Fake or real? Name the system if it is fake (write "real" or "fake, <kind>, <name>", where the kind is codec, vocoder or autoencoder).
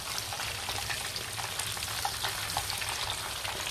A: real